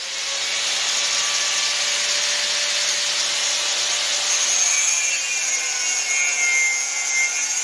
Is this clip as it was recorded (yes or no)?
yes